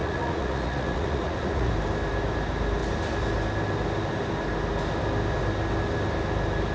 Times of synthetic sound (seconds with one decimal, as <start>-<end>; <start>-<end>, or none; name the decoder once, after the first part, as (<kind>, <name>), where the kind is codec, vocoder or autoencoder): 0.0-1.7 (vocoder, Vocos)